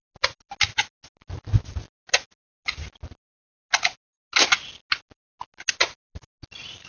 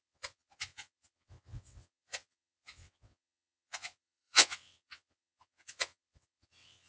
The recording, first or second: first